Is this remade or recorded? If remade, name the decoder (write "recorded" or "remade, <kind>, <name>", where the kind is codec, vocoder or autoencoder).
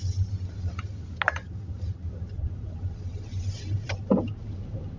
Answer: recorded